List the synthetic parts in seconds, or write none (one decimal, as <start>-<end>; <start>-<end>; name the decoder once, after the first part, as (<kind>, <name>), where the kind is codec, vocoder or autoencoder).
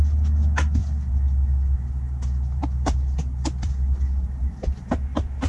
none